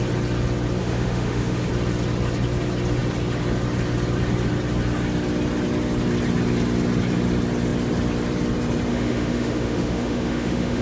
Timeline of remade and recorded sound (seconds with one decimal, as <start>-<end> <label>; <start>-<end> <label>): 0.0-0.8 recorded; 0.8-1.7 remade; 1.7-8.9 recorded; 8.9-10.8 remade